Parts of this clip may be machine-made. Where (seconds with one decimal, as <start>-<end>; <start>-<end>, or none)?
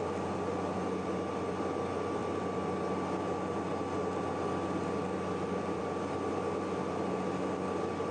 none